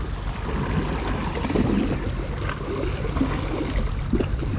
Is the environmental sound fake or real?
real